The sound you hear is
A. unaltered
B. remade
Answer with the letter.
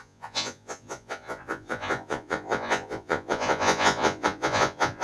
B